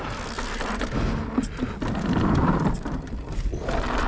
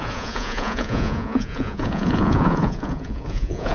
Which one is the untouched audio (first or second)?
first